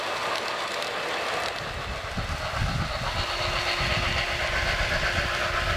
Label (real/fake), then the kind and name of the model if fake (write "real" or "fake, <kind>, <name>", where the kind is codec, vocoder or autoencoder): real